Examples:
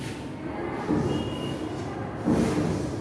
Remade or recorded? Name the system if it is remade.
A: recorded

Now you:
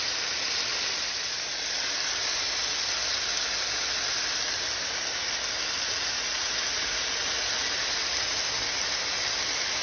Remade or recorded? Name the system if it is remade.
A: recorded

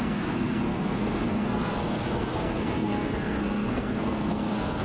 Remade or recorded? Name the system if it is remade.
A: remade, codec, SNAC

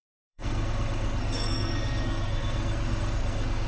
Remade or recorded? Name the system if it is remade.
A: remade, codec, SNAC